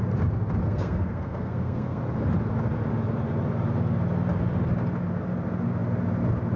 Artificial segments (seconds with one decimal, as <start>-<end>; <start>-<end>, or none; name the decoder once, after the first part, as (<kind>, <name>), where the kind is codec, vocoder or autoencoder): 0.6-2.0 (codec, SNAC)